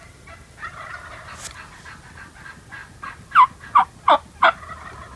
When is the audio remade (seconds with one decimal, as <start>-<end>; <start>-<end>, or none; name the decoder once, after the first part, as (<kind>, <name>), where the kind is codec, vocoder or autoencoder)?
none